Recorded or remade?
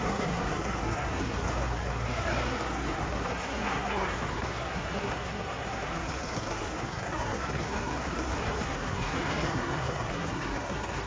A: remade